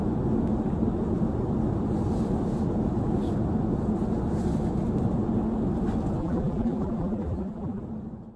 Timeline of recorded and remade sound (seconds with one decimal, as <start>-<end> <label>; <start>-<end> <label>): 0.0-6.2 recorded; 6.2-7.8 remade; 7.8-8.4 recorded